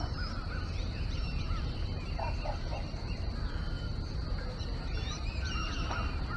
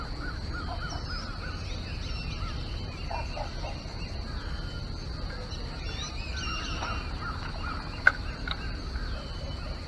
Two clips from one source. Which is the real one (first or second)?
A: second